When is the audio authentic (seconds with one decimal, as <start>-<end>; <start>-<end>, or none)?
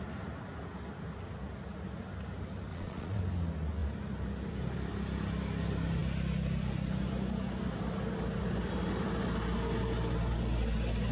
0.0-2.7; 3.2-11.1